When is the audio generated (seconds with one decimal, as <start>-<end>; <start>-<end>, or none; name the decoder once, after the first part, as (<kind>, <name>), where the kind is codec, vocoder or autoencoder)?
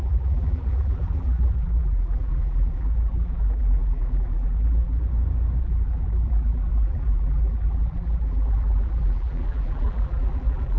0.0-5.1 (vocoder, BigVGAN v2); 5.6-10.8